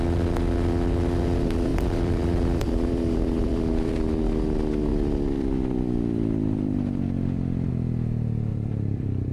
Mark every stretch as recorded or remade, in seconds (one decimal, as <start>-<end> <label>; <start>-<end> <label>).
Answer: 0.0-1.7 recorded; 1.7-4.2 remade; 4.2-4.9 recorded; 4.9-7.7 remade; 7.7-8.5 recorded; 8.5-9.3 remade